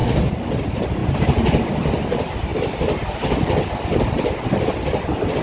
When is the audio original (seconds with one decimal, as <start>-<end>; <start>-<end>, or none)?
0.0-1.0; 1.7-5.4